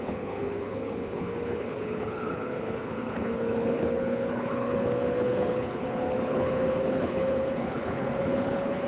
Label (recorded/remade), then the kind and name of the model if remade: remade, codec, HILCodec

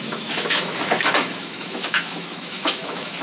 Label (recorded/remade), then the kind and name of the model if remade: remade, autoencoder, DAC-VAE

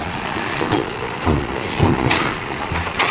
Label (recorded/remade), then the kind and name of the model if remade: remade, vocoder, Vocos